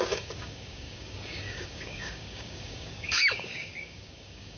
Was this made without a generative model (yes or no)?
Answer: no